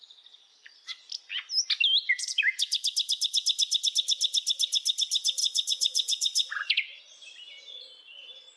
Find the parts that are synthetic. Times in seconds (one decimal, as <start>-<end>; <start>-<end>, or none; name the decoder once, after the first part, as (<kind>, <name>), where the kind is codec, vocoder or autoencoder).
5.4-7.0 (vocoder, Vocos)